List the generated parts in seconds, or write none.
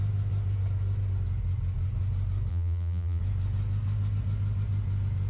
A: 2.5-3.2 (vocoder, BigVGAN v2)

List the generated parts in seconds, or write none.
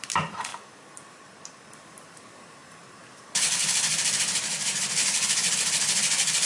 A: 0.0-0.5 (vocoder, BigVGAN v2); 1.7-6.5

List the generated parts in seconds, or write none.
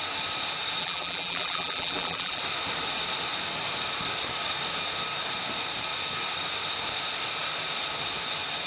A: 0.8-2.4 (vocoder, BigVGAN v2)